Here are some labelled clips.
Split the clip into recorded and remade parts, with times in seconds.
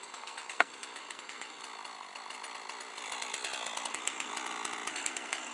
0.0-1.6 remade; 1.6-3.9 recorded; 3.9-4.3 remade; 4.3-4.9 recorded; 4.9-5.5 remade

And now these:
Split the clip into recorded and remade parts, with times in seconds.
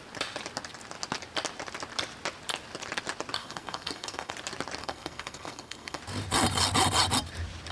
0.0-3.4 recorded; 3.4-4.3 remade; 4.3-4.8 recorded; 4.8-6.0 remade; 6.0-7.7 recorded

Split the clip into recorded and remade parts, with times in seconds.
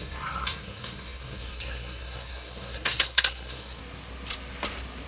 0.0-3.8 remade; 3.8-5.1 recorded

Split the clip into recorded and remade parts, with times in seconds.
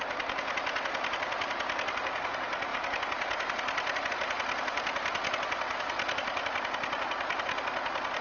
0.0-8.2 recorded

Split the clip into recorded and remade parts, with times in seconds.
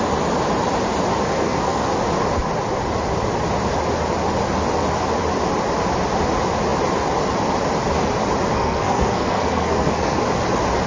0.0-1.3 recorded; 1.3-1.9 remade; 1.9-8.5 recorded; 8.5-10.2 remade; 10.2-10.9 recorded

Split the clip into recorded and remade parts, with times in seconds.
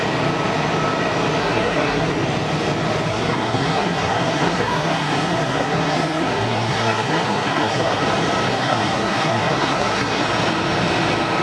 0.0-1.4 recorded; 1.4-2.1 remade; 2.1-3.1 recorded; 3.1-8.0 remade; 8.0-8.5 recorded; 8.5-10.2 remade; 10.2-11.4 recorded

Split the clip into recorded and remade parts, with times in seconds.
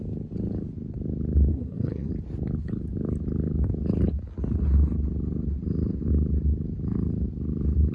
0.0-1.5 recorded; 1.5-2.1 remade; 2.1-7.9 recorded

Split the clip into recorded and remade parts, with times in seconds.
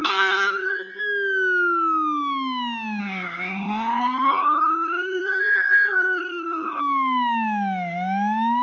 0.0-1.0 remade; 1.0-3.0 recorded; 3.0-6.8 remade; 6.8-8.6 recorded